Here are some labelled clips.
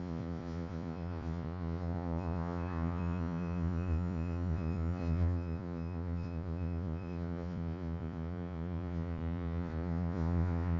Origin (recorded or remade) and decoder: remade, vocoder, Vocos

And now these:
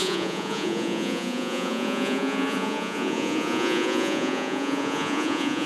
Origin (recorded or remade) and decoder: remade, vocoder, Vocos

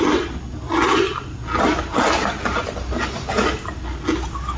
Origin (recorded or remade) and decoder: recorded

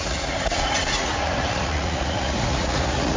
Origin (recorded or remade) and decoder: remade, vocoder, Vocos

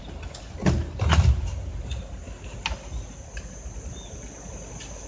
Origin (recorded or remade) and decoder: recorded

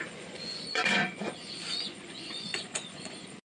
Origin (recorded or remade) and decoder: remade, vocoder, Vocos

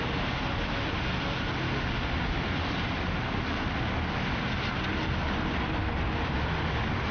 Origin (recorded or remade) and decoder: recorded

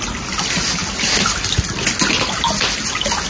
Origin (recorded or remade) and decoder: recorded